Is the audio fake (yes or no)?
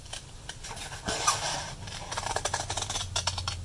no